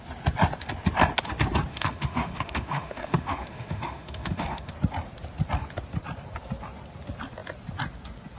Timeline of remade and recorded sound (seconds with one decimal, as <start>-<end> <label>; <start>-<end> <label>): 0.0-1.7 recorded; 1.7-4.7 remade; 4.7-8.4 recorded